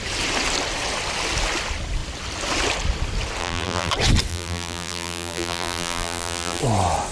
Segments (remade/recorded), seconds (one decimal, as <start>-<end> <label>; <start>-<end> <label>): 0.0-3.4 recorded; 3.4-3.9 remade; 3.9-4.3 recorded; 4.3-6.6 remade; 6.6-7.1 recorded